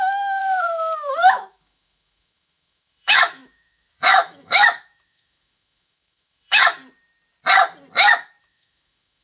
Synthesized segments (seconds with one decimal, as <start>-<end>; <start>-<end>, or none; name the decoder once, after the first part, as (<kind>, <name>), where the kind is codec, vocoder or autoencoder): 0.0-0.4 (autoencoder, DAC-VAE); 1.1-6.8; 8.4-9.2